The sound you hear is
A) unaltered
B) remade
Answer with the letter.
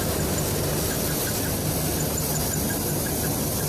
A